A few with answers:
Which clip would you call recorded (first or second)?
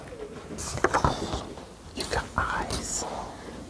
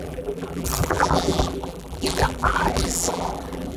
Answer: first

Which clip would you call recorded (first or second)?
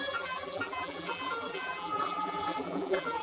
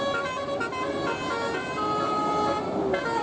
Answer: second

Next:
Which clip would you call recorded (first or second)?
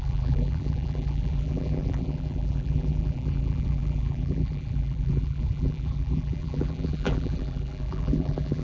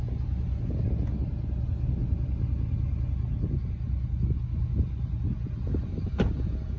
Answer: second